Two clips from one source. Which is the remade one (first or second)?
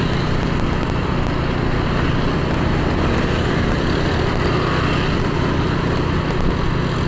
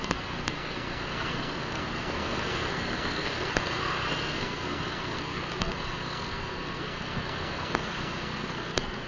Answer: second